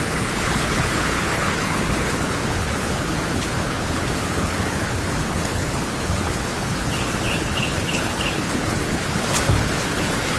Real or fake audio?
fake